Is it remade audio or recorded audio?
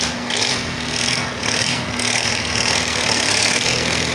remade